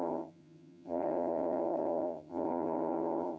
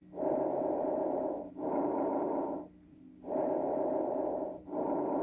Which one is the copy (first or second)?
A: first